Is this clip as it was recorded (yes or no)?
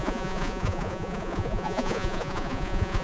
no